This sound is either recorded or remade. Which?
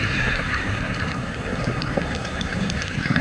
remade